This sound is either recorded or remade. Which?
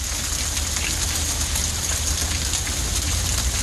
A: recorded